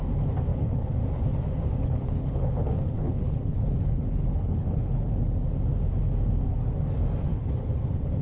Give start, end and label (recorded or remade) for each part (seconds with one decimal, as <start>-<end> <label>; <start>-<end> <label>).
0.0-0.5 recorded; 0.5-1.0 remade; 1.0-1.8 recorded; 1.8-5.1 remade; 5.1-7.3 recorded; 7.3-8.2 remade

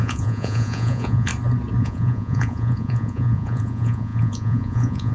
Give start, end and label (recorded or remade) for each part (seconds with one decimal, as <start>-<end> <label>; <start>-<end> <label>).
0.0-1.3 remade; 1.3-1.8 recorded; 1.8-5.1 remade

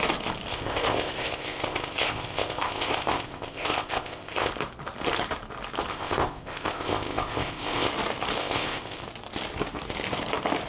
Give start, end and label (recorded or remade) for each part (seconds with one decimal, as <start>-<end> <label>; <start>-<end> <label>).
0.0-0.5 recorded; 0.5-4.5 remade; 4.5-5.9 recorded; 5.9-7.9 remade; 7.9-8.4 recorded; 8.4-9.0 remade; 9.0-10.7 recorded

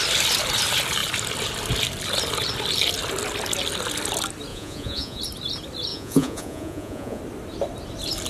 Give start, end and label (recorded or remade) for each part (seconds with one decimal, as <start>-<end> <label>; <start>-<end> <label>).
0.0-4.5 recorded; 4.5-5.2 remade; 5.2-5.9 recorded; 5.9-7.2 remade; 7.2-8.3 recorded

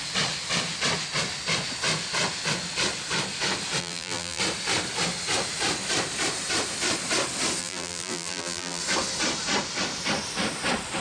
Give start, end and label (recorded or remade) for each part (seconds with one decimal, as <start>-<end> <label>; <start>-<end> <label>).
0.0-3.8 recorded; 3.8-4.4 remade; 4.4-7.6 recorded; 7.6-8.8 remade; 8.8-11.0 recorded

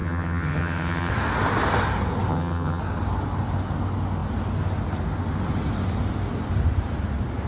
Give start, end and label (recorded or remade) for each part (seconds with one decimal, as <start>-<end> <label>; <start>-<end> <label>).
0.0-1.1 remade; 1.1-2.3 recorded; 2.3-2.8 remade; 2.8-7.5 recorded